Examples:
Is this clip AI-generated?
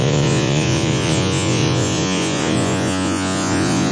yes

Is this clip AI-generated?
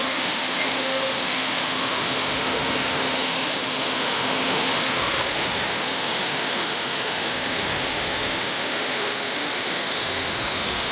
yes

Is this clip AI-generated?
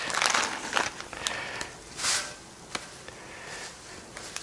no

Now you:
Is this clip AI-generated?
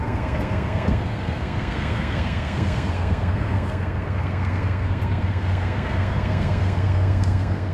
yes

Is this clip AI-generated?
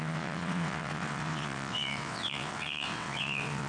yes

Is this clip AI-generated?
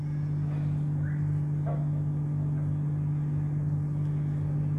no